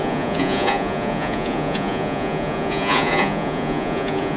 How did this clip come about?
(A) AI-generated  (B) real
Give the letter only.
A